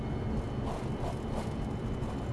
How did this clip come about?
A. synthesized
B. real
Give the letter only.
B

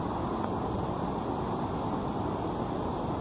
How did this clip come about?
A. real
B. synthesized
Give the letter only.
A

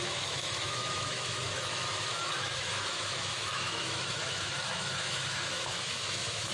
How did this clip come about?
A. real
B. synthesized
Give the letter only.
B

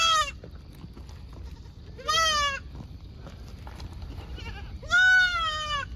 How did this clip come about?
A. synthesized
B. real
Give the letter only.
B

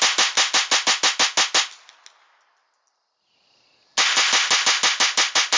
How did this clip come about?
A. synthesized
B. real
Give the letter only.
B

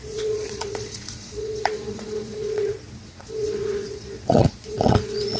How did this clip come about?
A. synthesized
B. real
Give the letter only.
A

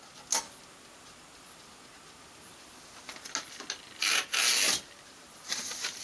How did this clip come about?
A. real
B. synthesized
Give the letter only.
A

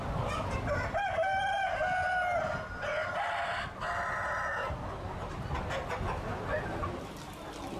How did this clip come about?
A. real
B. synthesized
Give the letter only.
A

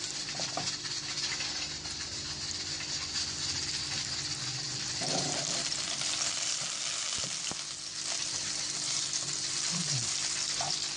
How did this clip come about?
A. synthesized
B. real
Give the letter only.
A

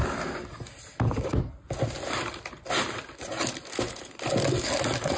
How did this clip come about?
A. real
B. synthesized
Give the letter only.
A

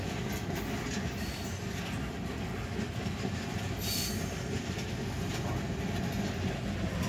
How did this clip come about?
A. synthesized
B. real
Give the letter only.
B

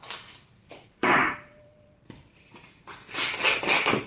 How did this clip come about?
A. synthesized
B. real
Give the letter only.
A